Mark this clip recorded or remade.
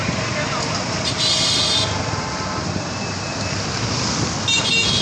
recorded